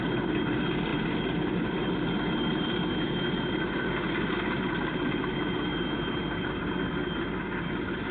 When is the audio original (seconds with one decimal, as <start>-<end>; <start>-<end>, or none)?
0.0-8.1